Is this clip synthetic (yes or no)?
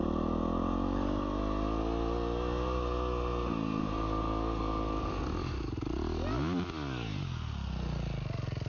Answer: no